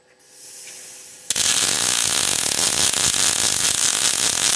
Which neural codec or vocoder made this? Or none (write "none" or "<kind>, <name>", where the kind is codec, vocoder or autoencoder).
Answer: none